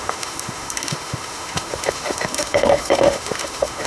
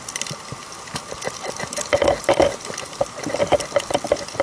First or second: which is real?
second